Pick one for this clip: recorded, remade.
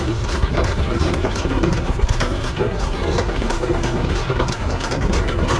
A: remade